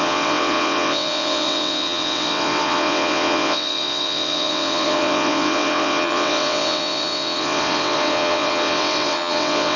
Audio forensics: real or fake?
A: fake